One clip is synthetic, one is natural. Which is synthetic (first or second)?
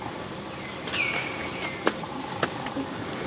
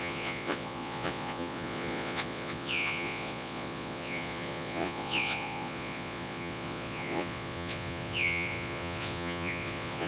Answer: second